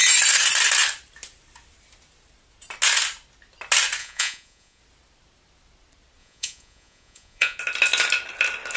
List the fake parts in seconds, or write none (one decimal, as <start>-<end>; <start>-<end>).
4.0-4.8; 6.2-7.6